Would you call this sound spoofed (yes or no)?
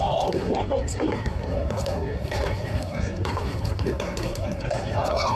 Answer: yes